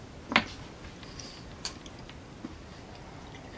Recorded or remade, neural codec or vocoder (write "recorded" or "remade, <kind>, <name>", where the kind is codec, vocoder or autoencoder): recorded